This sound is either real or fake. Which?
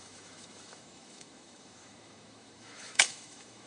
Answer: fake